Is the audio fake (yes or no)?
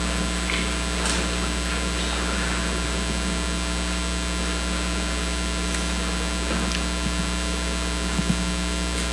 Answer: no